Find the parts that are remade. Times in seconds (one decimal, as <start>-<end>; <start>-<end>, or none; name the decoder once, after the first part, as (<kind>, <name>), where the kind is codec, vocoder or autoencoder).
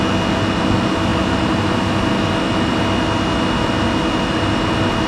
none